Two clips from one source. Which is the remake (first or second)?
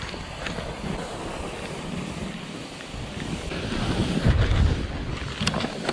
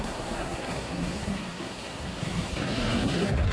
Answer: second